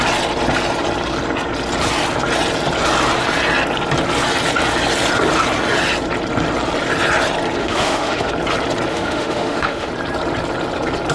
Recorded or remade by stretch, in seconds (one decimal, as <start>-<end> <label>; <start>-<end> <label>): 0.0-7.6 recorded; 7.6-8.3 remade; 8.3-8.9 recorded; 8.9-9.9 remade; 9.9-11.1 recorded